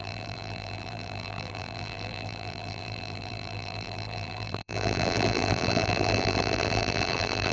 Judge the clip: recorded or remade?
remade